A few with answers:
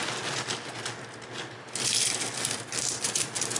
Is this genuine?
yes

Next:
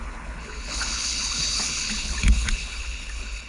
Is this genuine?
no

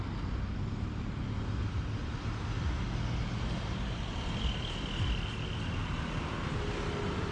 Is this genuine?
yes